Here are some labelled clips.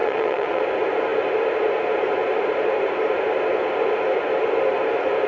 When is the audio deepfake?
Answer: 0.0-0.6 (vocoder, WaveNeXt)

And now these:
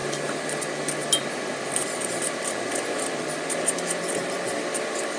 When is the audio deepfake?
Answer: none

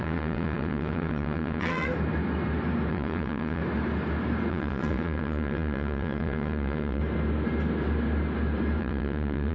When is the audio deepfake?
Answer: 0.0-1.9 (vocoder, WaveNeXt); 2.9-3.6; 4.5-7.0; 8.8-9.5